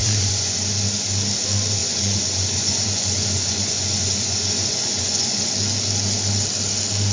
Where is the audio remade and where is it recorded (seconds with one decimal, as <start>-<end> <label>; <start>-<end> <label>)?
0.0-0.7 remade; 0.7-1.8 recorded; 1.8-5.5 remade; 5.5-7.1 recorded